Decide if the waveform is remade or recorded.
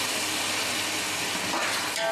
recorded